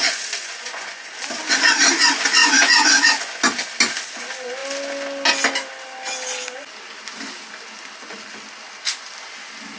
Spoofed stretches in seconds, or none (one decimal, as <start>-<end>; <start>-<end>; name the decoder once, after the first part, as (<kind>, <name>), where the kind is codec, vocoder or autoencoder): 0.0-1.1 (vocoder, Vocos); 2.4-3.4